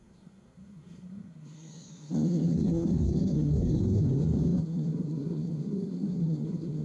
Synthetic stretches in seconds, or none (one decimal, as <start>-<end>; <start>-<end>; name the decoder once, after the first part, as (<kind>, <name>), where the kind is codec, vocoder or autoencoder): 0.0-6.8 (codec, SNAC)